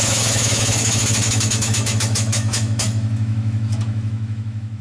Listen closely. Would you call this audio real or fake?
fake